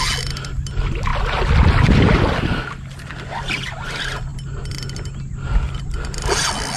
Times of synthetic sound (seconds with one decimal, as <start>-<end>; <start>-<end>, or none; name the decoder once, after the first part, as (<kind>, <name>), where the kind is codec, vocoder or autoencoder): none